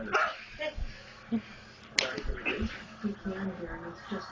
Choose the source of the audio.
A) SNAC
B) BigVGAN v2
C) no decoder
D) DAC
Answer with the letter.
C